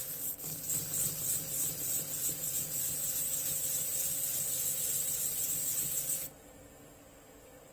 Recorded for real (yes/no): yes